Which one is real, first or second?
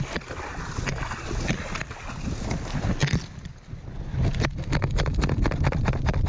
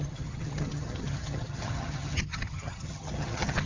first